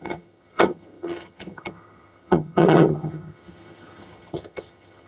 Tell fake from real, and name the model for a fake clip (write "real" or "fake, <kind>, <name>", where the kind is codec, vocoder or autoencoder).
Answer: fake, vocoder, HiFi-GAN